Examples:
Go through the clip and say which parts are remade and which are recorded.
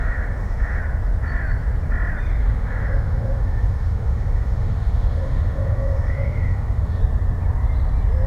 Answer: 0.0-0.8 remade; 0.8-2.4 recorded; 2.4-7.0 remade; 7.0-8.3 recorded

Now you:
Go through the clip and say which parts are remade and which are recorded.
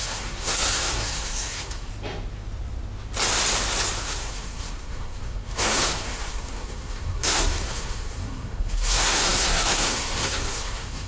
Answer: 0.0-1.9 remade; 1.9-4.0 recorded; 4.0-11.1 remade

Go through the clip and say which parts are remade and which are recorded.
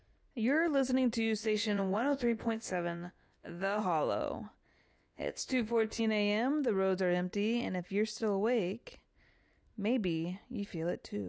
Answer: 0.0-1.4 recorded; 1.4-3.8 remade; 3.8-4.9 recorded; 4.9-6.0 remade; 6.0-11.3 recorded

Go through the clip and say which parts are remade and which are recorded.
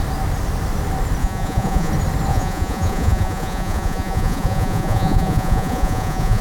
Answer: 0.0-1.2 recorded; 1.2-1.9 remade; 1.9-2.3 recorded; 2.3-6.4 remade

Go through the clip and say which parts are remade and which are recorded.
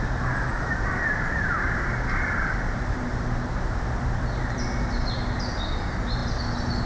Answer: 0.0-0.5 recorded; 0.5-4.6 remade; 4.6-6.9 recorded